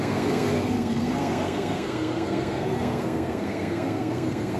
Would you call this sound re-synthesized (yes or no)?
yes